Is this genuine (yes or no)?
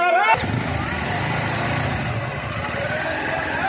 yes